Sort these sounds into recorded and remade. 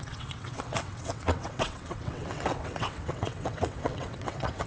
remade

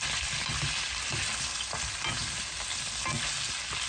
recorded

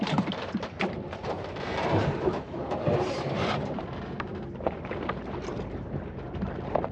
remade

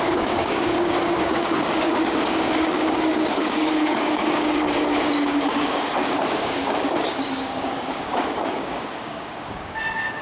remade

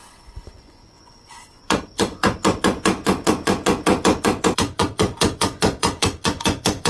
remade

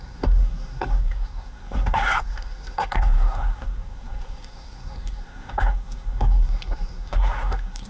remade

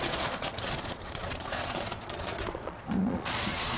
remade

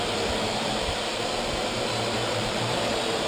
remade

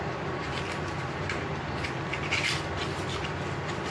recorded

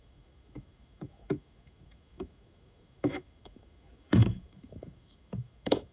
remade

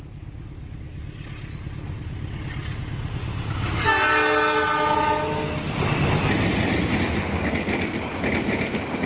recorded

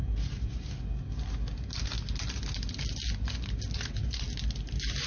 recorded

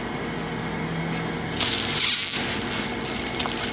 recorded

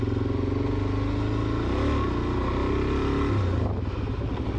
recorded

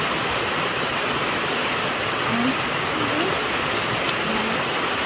recorded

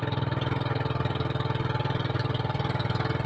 recorded